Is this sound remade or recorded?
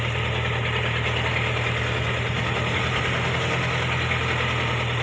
recorded